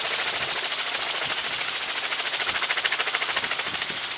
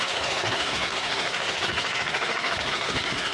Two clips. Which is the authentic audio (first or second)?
first